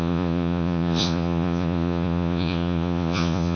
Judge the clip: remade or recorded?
remade